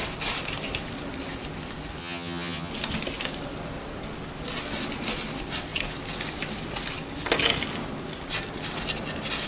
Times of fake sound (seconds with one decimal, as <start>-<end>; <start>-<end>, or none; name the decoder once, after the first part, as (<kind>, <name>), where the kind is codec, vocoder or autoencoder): 2.0-2.7 (vocoder, HiFi-GAN)